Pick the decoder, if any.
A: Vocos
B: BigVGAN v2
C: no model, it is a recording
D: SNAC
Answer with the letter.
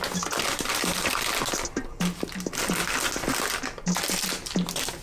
C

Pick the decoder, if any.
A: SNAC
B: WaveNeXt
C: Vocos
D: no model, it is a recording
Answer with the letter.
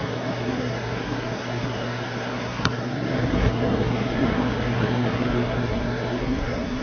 A